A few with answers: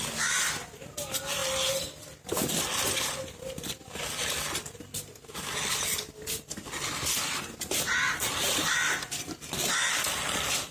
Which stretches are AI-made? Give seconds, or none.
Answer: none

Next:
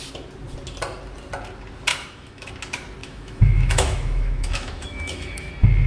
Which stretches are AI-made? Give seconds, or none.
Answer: 1.9-2.5 (autoencoder, DAC-VAE); 3.0-5.5

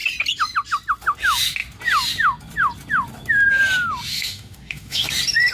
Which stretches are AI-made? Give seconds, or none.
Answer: 4.1-5.1 (autoencoder, DAC-VAE)

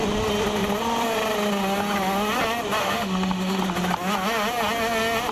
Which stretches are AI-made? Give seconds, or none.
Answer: 2.8-3.6 (autoencoder, DAC-VAE)

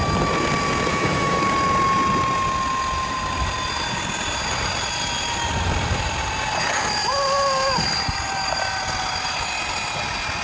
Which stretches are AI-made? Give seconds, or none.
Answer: 0.9-1.4 (autoencoder, DAC-VAE)

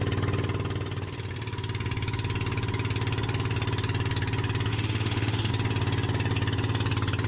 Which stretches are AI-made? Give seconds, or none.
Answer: 4.7-5.5 (autoencoder, DAC-VAE)

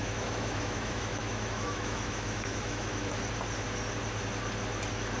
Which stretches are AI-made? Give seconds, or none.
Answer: 0.0-3.1 (autoencoder, DAC-VAE)